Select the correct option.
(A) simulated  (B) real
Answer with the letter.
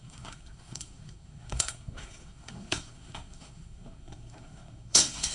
A